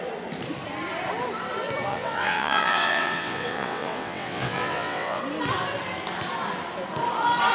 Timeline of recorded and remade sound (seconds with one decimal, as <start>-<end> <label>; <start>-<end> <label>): 0.0-1.9 recorded; 1.9-5.2 remade; 5.2-7.5 recorded